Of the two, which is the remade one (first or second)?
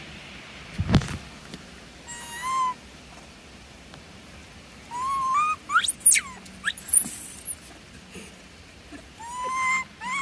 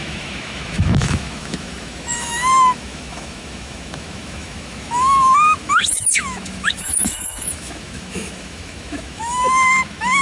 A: second